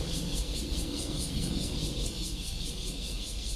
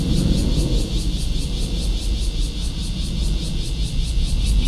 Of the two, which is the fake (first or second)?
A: first